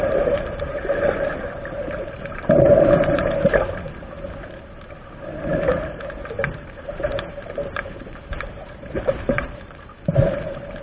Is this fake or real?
fake